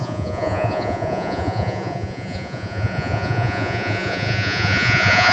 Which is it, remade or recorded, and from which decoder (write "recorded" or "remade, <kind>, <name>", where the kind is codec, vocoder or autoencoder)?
remade, vocoder, Vocos